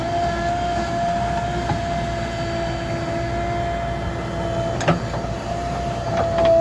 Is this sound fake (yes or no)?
no